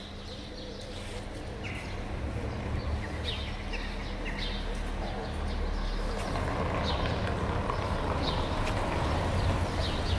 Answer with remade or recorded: recorded